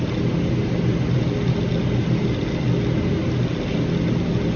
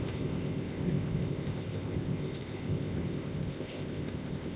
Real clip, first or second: first